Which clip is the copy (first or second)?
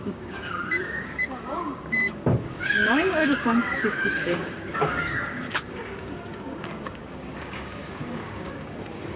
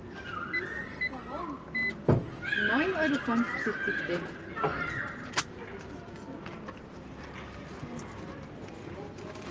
first